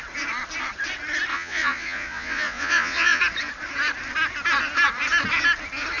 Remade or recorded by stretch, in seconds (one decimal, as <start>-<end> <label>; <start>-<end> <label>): 0.0-1.3 recorded; 1.3-3.2 remade; 3.2-6.0 recorded